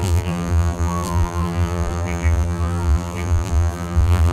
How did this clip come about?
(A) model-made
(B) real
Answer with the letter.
A